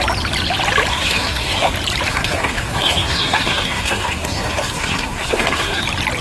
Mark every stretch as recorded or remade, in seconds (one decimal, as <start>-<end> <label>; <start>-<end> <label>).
0.0-0.9 recorded; 0.9-1.7 remade; 1.7-2.1 recorded; 2.1-5.8 remade; 5.8-6.2 recorded